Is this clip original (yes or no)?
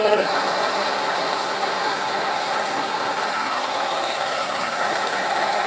no